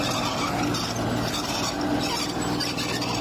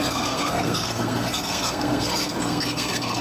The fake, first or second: second